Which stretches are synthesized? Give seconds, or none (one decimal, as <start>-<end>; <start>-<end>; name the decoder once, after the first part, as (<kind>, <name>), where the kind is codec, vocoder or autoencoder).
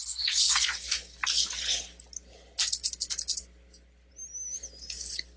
0.0-0.5 (codec, HILCodec)